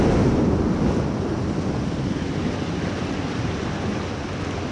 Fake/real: real